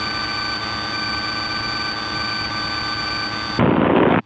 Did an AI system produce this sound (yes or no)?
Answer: no